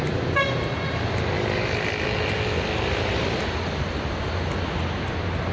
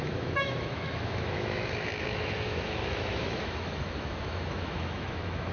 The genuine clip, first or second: first